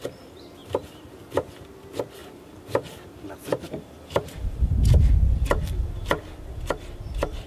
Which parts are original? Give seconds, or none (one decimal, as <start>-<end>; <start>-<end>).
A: 0.0-0.6; 1.3-2.2; 5.6-7.5